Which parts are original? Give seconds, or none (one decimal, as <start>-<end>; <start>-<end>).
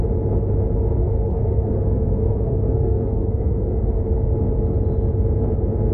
0.0-1.0; 4.3-5.9